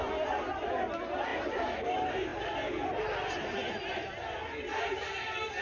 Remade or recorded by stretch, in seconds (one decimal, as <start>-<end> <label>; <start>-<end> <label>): 0.0-1.3 recorded; 1.3-1.9 remade; 1.9-5.6 recorded